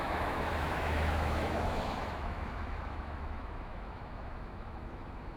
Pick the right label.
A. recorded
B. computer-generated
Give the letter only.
B